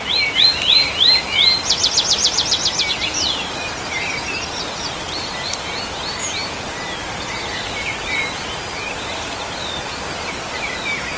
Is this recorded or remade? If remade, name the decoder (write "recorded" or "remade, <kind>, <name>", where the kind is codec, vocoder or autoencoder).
recorded